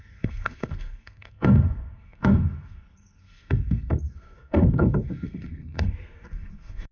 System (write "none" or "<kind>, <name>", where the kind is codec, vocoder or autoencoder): codec, SNAC